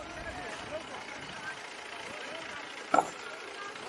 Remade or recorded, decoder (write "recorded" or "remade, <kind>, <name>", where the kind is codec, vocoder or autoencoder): recorded